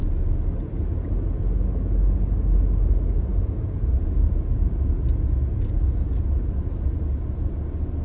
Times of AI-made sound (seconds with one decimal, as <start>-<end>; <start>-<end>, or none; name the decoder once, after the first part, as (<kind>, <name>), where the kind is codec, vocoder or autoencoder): 3.3-4.3 (vocoder, Vocos)